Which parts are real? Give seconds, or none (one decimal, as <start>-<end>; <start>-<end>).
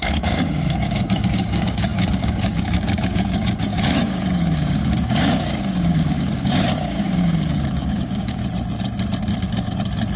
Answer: 8.4-10.2